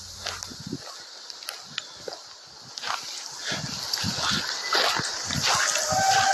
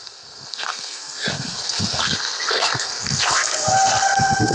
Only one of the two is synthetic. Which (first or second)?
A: second